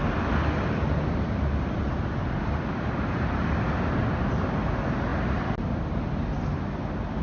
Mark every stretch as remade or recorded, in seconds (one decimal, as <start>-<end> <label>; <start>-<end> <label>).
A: 0.0-2.2 recorded; 2.2-3.8 remade; 3.8-7.2 recorded